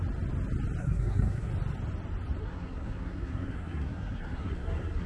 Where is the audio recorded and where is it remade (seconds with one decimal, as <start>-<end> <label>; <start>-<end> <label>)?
0.0-0.8 recorded; 0.8-1.5 remade; 1.5-2.4 recorded; 2.4-5.1 remade